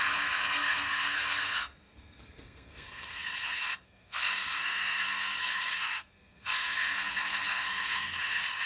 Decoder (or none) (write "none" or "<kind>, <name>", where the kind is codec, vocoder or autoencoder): codec, SNAC